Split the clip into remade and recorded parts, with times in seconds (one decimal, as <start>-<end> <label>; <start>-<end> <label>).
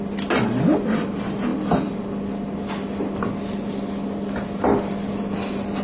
0.0-5.8 recorded